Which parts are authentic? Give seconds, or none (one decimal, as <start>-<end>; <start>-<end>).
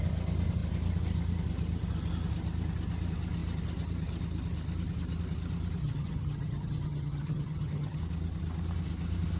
0.0-5.8; 8.0-9.4